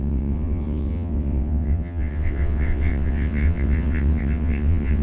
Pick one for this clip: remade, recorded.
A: remade